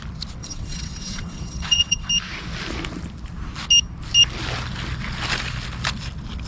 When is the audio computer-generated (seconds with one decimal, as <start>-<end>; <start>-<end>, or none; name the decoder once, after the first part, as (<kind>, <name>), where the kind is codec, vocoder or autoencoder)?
0.4-2.1 (vocoder, WaveNeXt)